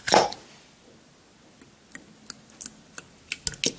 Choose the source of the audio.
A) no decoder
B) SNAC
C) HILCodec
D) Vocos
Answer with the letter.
A